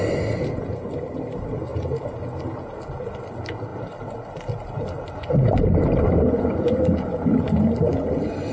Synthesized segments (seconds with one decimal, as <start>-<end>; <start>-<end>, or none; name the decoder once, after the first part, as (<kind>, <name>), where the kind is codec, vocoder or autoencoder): none